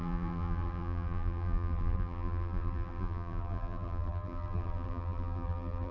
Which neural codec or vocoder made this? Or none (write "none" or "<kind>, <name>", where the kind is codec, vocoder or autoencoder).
vocoder, BigVGAN v2